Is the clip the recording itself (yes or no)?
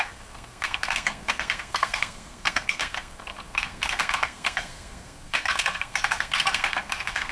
no